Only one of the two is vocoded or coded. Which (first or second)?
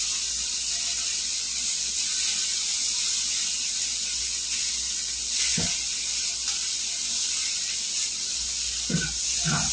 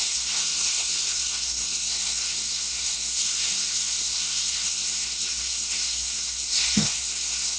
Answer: second